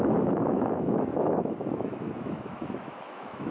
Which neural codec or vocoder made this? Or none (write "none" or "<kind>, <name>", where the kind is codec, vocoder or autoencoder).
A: autoencoder, DAC-VAE